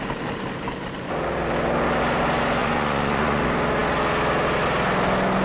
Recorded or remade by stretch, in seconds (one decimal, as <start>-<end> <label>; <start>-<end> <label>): 0.0-2.6 recorded; 2.6-3.4 remade; 3.4-5.4 recorded